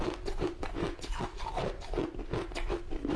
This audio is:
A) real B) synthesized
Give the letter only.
A